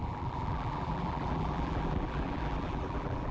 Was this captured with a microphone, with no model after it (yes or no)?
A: no